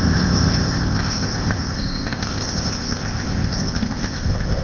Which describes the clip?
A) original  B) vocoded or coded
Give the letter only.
B